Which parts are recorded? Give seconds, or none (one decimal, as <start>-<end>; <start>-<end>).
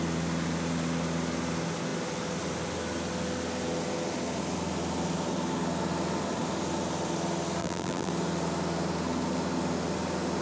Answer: 0.0-7.6; 8.1-10.4